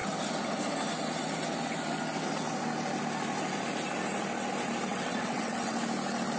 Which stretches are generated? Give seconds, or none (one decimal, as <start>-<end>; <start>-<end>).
4.9-5.8